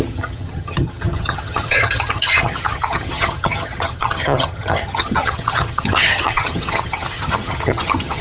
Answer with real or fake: fake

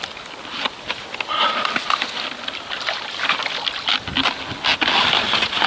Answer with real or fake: real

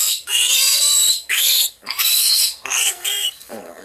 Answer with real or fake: fake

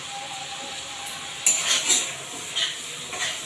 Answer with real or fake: real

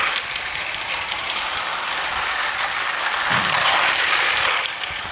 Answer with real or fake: fake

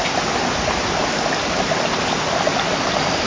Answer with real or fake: real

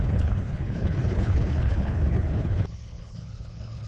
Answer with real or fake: fake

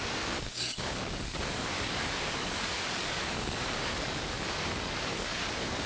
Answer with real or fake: fake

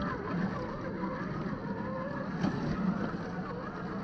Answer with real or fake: real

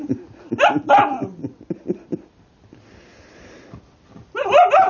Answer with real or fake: real